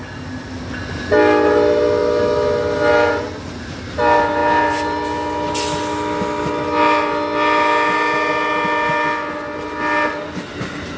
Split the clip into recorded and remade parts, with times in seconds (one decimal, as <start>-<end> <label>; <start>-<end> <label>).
0.0-11.0 recorded

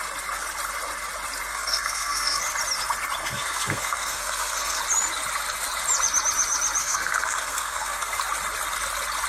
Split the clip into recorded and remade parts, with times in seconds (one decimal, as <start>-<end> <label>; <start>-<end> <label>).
0.0-1.5 recorded; 1.5-2.4 remade; 2.4-3.2 recorded; 3.2-4.8 remade; 4.8-6.8 recorded; 6.8-8.2 remade; 8.2-9.3 recorded

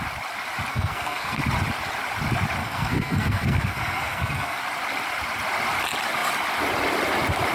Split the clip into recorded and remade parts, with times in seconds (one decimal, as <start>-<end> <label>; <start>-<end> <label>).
0.0-0.7 recorded; 0.7-1.4 remade; 1.4-2.6 recorded; 2.6-4.6 remade; 4.6-7.5 recorded